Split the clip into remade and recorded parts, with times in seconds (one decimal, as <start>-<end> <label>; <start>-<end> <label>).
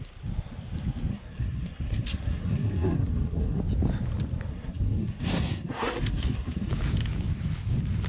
0.0-1.1 recorded; 1.1-3.6 remade; 3.6-4.5 recorded; 4.5-6.7 remade; 6.7-8.1 recorded